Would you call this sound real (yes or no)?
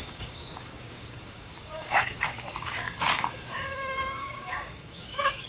no